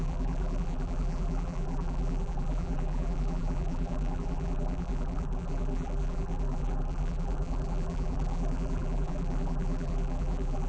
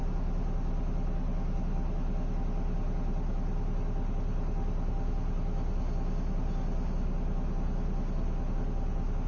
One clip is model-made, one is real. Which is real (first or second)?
second